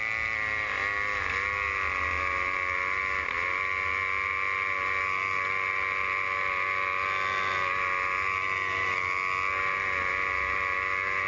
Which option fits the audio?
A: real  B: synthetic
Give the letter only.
A